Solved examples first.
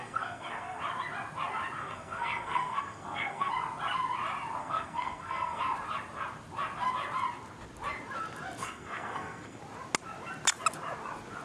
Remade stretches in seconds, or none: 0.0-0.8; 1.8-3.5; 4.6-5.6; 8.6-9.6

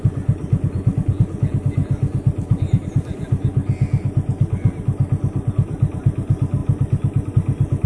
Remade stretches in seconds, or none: none

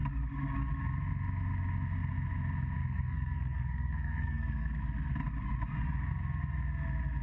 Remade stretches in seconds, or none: 2.8-4.8

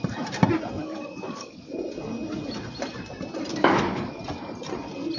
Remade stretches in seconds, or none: 0.8-1.7; 3.5-4.2